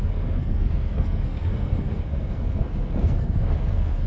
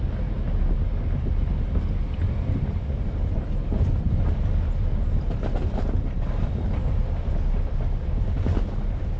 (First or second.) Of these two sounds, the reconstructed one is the first